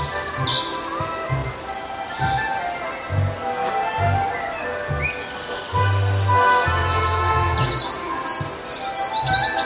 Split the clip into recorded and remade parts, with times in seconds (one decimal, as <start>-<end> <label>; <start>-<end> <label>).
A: 0.0-6.8 recorded; 6.8-7.7 remade; 7.7-9.6 recorded